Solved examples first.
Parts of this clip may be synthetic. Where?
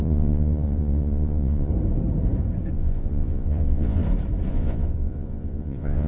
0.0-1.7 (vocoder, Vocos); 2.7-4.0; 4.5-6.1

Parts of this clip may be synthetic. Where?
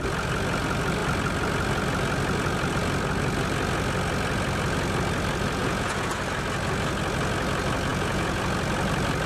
5.6-6.2 (vocoder, Vocos); 7.9-8.4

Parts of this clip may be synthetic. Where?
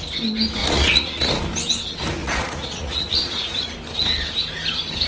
0.6-1.3 (vocoder, Vocos); 2.2-3.7